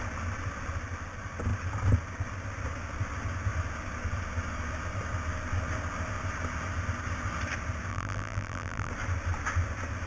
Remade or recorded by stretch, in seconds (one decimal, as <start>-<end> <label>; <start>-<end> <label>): 0.0-7.9 recorded; 7.9-8.9 remade; 8.9-10.1 recorded